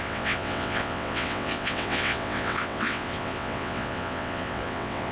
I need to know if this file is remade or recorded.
remade